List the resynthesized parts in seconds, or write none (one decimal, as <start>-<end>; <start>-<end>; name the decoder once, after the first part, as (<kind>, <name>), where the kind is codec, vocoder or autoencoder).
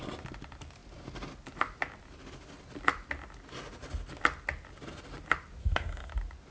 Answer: 5.6-6.1 (codec, SNAC)